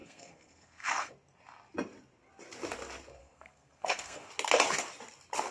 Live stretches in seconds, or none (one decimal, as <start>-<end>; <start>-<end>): 1.1-3.2; 4.3-5.5